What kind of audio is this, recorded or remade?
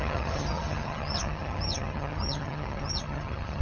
remade